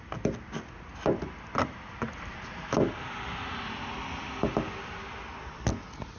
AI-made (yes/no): no